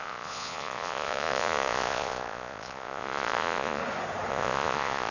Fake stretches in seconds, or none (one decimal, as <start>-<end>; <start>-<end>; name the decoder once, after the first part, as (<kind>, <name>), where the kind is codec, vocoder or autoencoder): 0.0-3.8 (vocoder, Vocos); 4.3-5.1